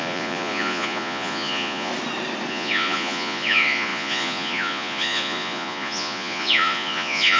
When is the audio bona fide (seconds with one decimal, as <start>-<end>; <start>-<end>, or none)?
1.9-2.5